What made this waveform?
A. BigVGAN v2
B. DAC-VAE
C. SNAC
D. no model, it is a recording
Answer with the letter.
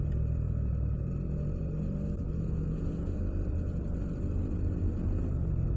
D